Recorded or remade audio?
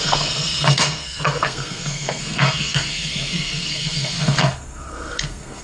remade